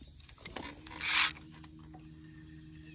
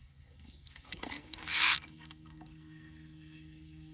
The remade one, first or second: second